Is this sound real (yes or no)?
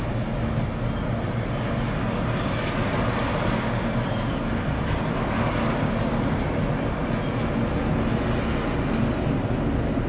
yes